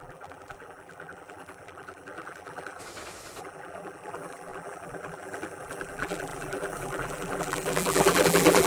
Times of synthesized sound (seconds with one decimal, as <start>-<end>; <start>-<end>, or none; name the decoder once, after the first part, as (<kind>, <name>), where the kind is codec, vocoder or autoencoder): 0.0-2.8 (vocoder, BigVGAN v2); 3.4-8.7